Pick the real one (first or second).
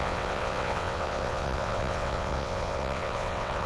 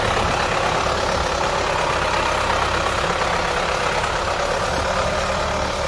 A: second